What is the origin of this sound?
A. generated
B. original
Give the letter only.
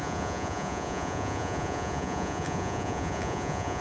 A